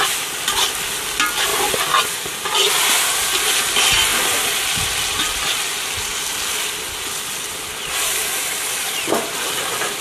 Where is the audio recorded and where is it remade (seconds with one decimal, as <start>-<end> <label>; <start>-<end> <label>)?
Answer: 0.0-10.0 recorded